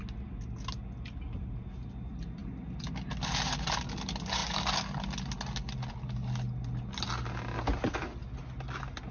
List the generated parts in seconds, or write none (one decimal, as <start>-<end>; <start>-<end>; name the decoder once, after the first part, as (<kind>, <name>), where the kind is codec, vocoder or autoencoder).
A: none